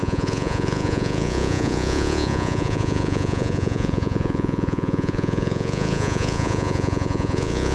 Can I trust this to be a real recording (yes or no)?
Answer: no